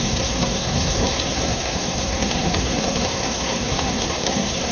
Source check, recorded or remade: remade